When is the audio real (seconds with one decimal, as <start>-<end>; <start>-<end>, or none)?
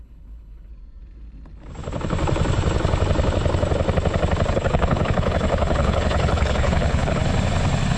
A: 0.7-4.5; 7.2-8.0